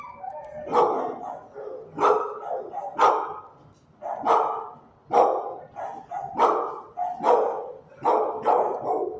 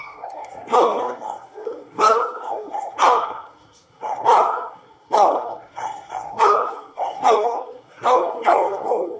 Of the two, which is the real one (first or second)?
first